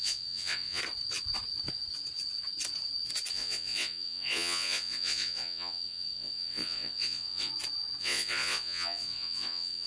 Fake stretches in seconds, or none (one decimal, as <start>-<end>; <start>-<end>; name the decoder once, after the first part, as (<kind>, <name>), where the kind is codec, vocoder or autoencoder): 0.0-0.8 (vocoder, Vocos); 3.3-7.5; 8.0-9.9